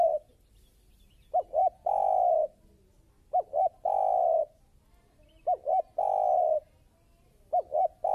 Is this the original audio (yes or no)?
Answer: yes